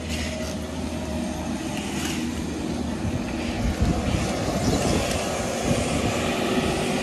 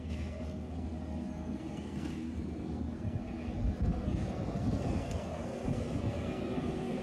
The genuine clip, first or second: first